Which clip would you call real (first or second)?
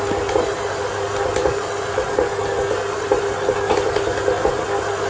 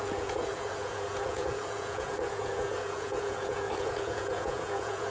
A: first